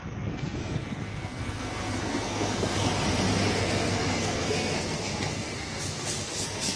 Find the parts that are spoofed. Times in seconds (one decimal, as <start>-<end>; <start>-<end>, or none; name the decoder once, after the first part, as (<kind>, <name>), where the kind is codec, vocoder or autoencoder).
0.0-2.9 (codec, SNAC); 3.5-6.8